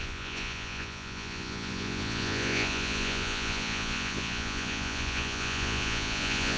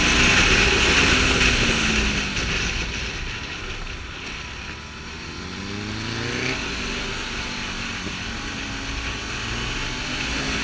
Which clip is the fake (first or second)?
first